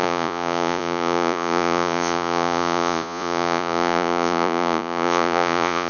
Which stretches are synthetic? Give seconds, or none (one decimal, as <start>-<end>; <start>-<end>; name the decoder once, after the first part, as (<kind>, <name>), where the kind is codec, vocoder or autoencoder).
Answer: 0.0-5.9 (vocoder, Vocos)

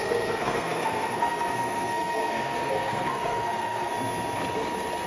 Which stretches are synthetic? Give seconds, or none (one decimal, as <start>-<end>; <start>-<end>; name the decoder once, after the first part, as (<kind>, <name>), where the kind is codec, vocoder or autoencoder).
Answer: 0.0-3.9 (codec, SNAC)